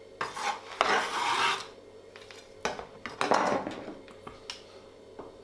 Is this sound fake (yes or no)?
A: no